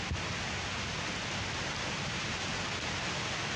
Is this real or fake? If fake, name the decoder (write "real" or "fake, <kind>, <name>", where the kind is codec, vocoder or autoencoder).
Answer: real